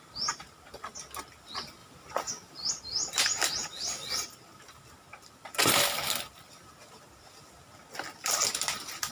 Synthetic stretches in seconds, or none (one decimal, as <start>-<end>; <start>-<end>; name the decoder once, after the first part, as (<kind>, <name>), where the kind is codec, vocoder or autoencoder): none